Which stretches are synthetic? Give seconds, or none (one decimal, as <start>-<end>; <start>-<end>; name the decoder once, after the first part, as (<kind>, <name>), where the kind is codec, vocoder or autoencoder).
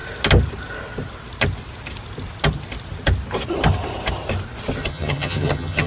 4.9-5.9 (vocoder, HiFi-GAN)